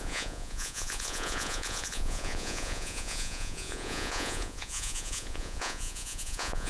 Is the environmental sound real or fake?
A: fake